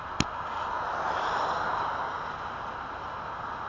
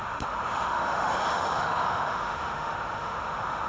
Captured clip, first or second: first